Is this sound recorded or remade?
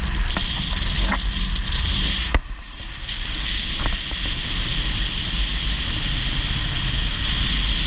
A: recorded